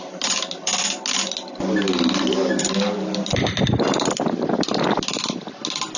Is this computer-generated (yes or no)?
no